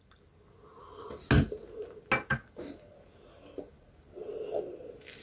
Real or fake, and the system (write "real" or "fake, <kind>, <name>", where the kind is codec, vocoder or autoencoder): real